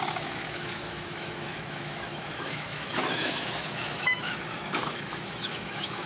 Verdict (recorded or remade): remade